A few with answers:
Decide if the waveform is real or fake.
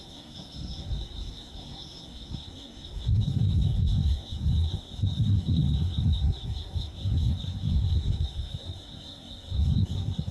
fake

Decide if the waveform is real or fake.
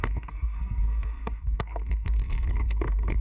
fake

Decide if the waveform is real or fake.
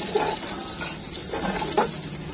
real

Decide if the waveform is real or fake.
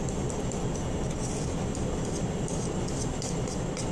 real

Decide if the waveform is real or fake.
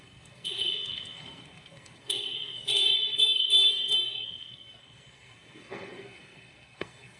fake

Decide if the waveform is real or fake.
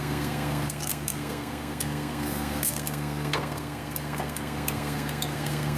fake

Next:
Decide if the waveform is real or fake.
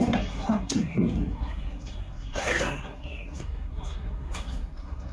fake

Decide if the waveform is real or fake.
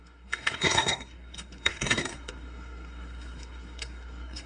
fake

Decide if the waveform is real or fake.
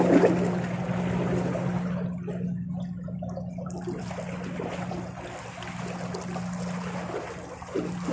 real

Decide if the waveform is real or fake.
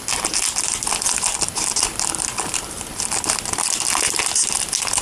real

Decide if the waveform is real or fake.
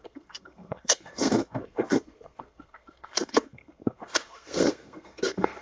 fake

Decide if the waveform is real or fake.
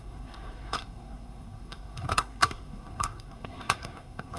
fake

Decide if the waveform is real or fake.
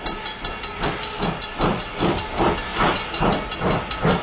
real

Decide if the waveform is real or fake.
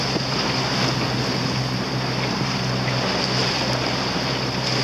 real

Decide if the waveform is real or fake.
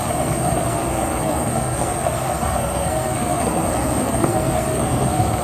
fake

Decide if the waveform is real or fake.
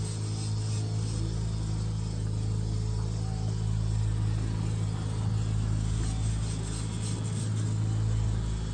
real